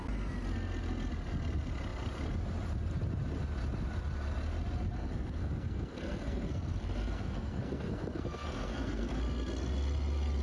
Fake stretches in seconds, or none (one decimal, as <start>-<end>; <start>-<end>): 5.0-9.2